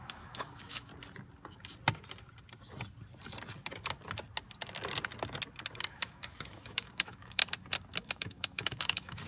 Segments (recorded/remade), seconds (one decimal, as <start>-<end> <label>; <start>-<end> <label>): 0.0-0.9 remade; 0.9-5.9 recorded; 5.9-7.4 remade; 7.4-8.0 recorded; 8.0-9.3 remade